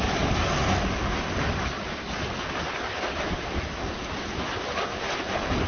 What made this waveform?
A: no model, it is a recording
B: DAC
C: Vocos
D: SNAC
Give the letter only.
A